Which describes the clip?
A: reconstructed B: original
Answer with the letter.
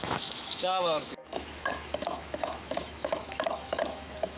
A